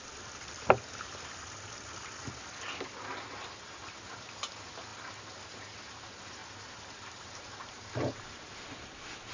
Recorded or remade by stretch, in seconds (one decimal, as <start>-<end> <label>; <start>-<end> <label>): 0.0-6.4 recorded; 6.4-8.6 remade; 8.6-9.3 recorded